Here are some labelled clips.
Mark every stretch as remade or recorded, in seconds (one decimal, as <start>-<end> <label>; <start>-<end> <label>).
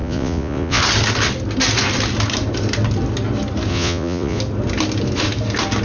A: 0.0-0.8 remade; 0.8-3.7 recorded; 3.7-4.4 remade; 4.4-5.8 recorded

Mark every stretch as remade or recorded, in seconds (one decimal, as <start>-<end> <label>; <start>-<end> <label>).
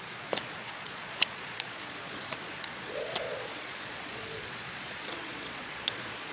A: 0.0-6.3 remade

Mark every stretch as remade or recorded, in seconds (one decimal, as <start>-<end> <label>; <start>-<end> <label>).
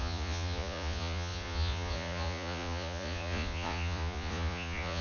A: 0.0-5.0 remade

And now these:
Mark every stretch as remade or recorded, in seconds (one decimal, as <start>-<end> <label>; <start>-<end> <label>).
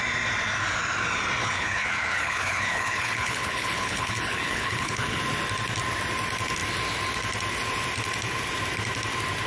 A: 0.0-1.4 recorded; 1.4-5.2 remade; 5.2-9.5 recorded